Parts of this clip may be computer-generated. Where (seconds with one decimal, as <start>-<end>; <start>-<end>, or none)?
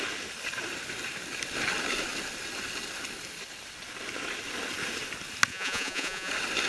5.5-6.3